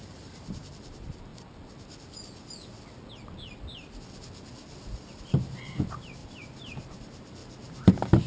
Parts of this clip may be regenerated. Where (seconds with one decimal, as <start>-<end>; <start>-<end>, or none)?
0.0-1.3; 5.2-7.4; 7.9-8.3